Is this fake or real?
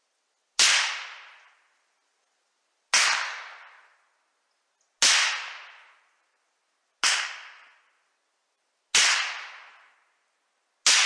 real